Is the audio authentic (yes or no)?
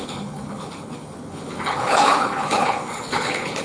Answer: no